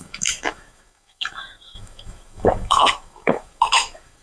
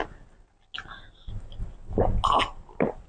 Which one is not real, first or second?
first